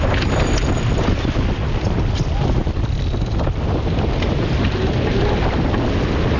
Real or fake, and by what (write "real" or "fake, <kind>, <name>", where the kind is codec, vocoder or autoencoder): real